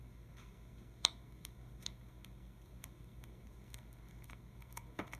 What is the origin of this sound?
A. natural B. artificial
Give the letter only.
B